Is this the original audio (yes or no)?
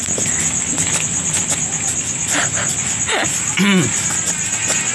yes